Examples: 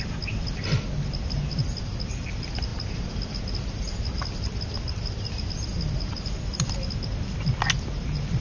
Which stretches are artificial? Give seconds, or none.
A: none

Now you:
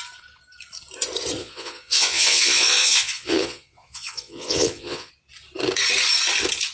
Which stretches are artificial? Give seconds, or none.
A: 1.4-5.1 (vocoder, Vocos)

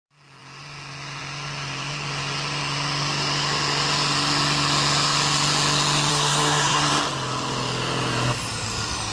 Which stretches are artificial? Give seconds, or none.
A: 6.1-6.9 (codec, SNAC)

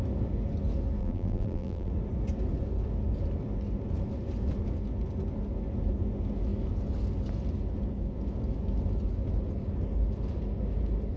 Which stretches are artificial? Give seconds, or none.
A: 1.0-1.9 (vocoder, BigVGAN v2)

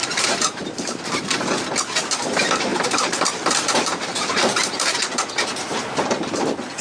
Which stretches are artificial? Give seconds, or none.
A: 0.0-1.6 (vocoder, BigVGAN v2); 2.7-5.0

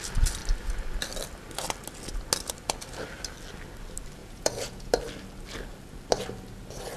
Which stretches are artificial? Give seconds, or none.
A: 4.2-4.9 (vocoder, Vocos)

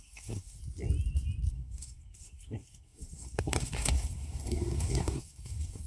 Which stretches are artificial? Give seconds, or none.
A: 0.0-0.6 (codec, SNAC); 1.5-5.9